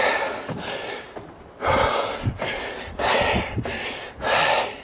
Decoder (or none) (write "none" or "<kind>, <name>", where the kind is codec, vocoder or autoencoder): none